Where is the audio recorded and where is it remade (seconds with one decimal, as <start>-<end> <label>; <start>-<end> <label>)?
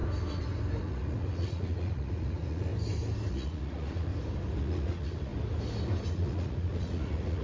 0.0-0.8 recorded; 0.8-2.7 remade; 2.7-3.3 recorded; 3.3-4.1 remade; 4.1-4.6 recorded; 4.6-5.3 remade; 5.3-6.1 recorded; 6.1-7.4 remade